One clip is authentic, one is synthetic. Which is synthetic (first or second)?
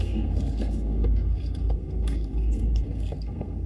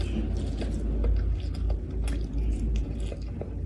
first